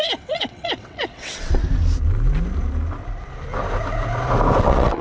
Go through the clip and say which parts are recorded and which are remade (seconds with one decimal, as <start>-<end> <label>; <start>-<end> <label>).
0.0-1.6 remade; 1.6-4.6 recorded; 4.6-5.0 remade